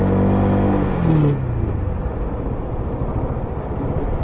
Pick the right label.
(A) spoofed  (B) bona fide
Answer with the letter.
B